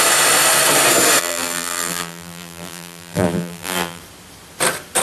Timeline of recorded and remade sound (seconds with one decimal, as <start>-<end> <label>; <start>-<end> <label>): 0.0-1.2 recorded; 1.2-4.0 remade; 4.0-5.0 recorded